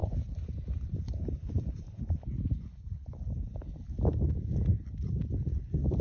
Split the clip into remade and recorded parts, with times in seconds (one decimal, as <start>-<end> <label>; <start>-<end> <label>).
0.0-3.6 remade; 3.6-6.0 recorded